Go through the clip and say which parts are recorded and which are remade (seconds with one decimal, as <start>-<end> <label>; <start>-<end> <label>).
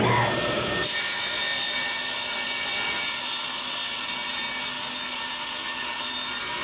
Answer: 0.0-6.6 recorded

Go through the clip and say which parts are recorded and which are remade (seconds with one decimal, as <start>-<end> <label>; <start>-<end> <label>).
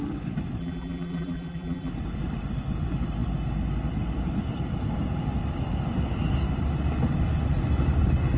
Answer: 0.0-0.6 recorded; 0.6-1.9 remade; 1.9-8.4 recorded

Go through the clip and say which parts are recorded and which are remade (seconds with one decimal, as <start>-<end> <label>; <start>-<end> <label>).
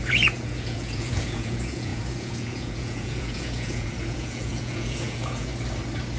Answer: 0.0-5.5 remade; 5.5-6.2 recorded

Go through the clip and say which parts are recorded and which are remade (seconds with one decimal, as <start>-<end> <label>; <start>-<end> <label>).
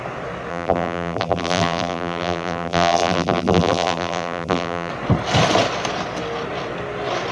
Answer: 0.0-0.5 recorded; 0.5-4.9 remade; 4.9-7.3 recorded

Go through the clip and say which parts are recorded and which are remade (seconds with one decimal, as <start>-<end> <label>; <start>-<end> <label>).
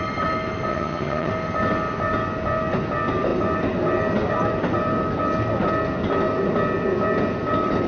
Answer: 0.0-0.7 recorded; 0.7-1.3 remade; 1.3-7.9 recorded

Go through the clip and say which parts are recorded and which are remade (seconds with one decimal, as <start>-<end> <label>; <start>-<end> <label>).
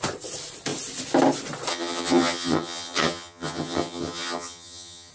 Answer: 0.0-1.7 recorded; 1.7-5.1 remade